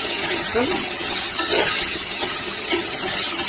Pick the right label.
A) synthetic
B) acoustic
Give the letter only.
A